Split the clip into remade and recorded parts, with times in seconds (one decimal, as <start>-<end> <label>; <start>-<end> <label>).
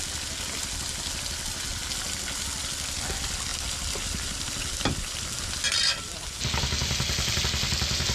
0.0-8.1 recorded